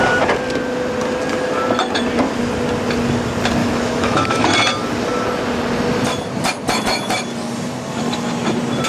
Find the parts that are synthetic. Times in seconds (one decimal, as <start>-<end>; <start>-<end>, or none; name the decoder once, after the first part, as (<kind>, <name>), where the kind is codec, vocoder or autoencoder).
3.6-4.4 (autoencoder, DAC-VAE)

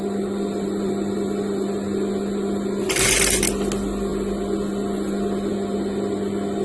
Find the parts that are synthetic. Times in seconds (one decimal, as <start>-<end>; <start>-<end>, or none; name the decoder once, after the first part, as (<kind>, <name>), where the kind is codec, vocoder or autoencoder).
none

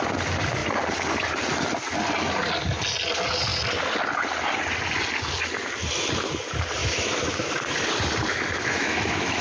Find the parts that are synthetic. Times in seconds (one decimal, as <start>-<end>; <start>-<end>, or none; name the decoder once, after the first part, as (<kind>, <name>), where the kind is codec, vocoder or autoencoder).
6.8-7.5 (autoencoder, DAC-VAE); 8.3-9.4

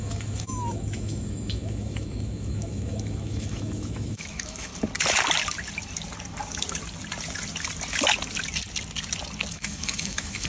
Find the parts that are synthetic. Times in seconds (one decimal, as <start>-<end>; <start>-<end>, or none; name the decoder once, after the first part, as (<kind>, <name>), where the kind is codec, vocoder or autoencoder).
0.0-4.7 (autoencoder, DAC-VAE); 9.5-10.5

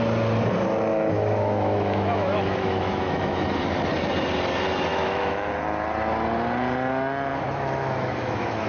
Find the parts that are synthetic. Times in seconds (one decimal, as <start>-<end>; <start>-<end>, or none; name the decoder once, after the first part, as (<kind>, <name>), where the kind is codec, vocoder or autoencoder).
0.9-3.6 (autoencoder, DAC-VAE); 4.9-5.5; 7.3-8.7

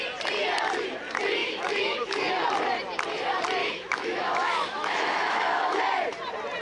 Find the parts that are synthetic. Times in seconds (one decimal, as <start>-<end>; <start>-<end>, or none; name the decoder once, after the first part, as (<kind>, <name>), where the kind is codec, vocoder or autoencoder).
1.4-2.3 (autoencoder, DAC-VAE); 3.6-5.8